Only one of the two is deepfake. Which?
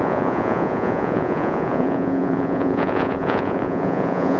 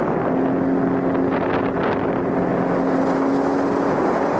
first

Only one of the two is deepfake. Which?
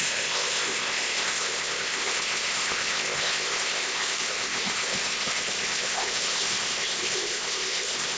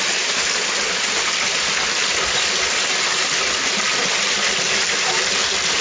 first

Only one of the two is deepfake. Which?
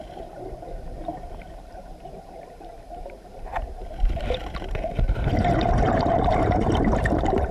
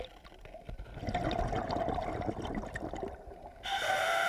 first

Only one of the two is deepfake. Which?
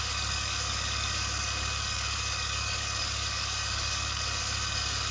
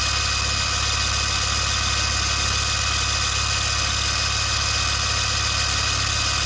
first